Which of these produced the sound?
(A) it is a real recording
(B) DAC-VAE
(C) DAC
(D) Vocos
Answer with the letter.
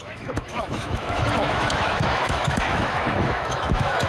B